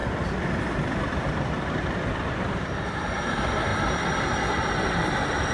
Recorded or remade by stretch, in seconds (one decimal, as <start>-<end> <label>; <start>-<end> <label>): 0.0-5.5 recorded